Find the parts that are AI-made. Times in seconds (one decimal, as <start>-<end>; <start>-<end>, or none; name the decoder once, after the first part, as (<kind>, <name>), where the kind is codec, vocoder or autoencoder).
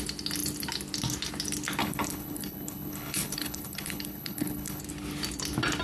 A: 1.8-4.8 (codec, HILCodec)